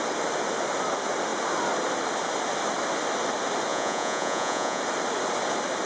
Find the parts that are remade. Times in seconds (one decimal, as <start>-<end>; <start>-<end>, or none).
3.7-4.8